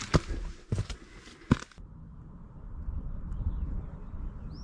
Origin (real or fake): real